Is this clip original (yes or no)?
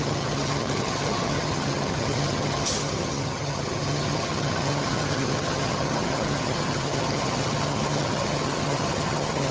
no